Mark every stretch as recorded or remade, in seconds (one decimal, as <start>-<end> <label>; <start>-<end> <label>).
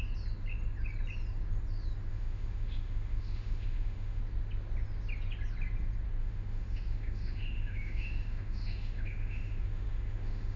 0.0-2.1 recorded; 2.1-4.2 remade; 4.2-6.2 recorded; 6.2-10.6 remade